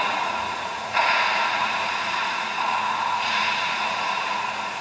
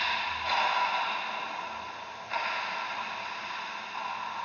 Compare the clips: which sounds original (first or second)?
second